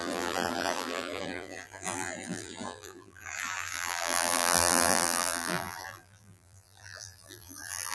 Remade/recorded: remade